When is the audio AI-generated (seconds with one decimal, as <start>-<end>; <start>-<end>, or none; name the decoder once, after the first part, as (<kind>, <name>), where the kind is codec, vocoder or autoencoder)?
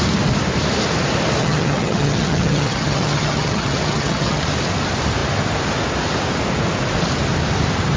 1.4-4.4 (vocoder, HiFi-GAN)